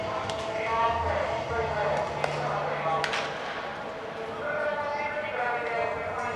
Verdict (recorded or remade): recorded